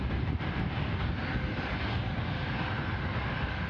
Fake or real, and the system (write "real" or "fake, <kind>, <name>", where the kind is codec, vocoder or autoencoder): real